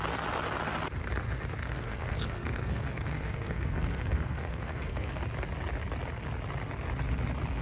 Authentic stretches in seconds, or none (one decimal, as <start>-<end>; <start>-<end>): 0.0-1.6; 5.2-7.6